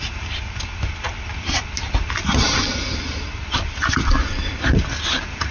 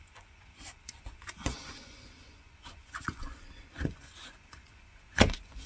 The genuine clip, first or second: first